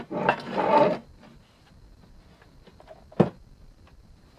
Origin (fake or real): real